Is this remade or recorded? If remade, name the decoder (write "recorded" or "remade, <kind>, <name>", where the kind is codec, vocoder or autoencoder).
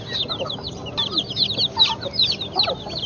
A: recorded